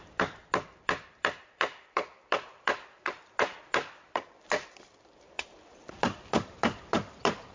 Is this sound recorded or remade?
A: remade